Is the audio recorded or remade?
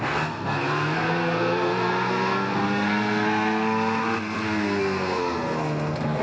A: remade